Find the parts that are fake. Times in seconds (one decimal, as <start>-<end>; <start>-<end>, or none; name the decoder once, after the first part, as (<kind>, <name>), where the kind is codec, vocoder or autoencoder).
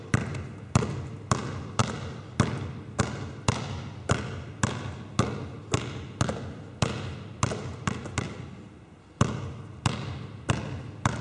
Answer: none